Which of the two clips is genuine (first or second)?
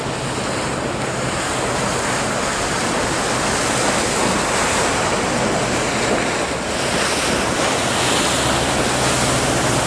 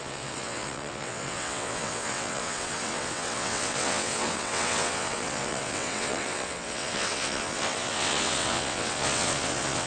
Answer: first